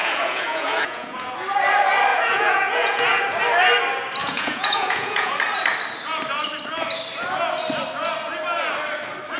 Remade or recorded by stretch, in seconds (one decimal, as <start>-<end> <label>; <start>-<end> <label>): 0.0-1.3 remade; 1.3-2.1 recorded; 2.1-3.2 remade; 3.2-4.2 recorded; 4.2-5.3 remade; 5.3-9.4 recorded